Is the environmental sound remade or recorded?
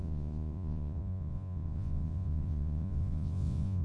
remade